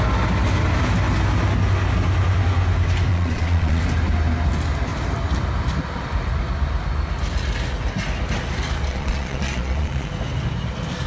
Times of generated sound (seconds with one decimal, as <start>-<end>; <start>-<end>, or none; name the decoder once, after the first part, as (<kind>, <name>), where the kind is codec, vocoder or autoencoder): 3.1-3.8 (vocoder, Vocos); 8.9-10.1